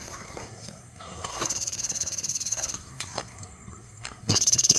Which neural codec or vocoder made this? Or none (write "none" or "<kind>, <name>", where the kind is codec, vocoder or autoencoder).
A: codec, SNAC